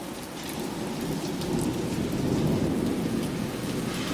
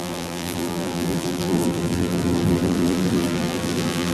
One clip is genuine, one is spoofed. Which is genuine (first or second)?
first